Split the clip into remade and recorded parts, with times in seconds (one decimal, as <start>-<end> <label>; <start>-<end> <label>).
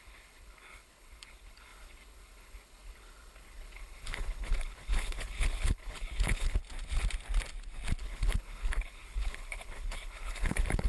0.0-6.6 remade; 6.6-8.0 recorded; 8.0-10.9 remade